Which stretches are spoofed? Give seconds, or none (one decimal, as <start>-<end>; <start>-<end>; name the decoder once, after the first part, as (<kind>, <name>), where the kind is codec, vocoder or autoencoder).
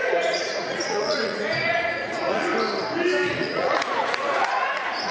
0.0-2.5 (vocoder, Vocos); 3.3-5.1